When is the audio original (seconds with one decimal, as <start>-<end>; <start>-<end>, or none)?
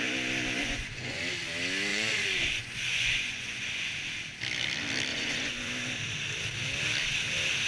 0.0-0.6; 1.2-1.9; 3.9-5.1; 5.7-7.7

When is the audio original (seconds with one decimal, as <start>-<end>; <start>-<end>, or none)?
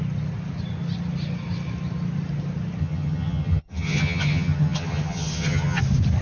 0.0-2.8; 5.8-6.2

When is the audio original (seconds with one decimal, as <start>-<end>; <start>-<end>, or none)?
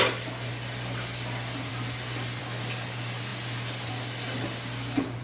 0.0-5.2